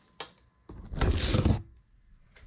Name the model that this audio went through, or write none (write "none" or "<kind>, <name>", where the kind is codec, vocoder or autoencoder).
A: none